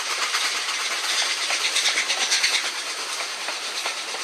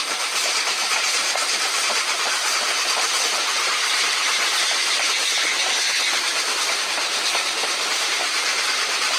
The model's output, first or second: second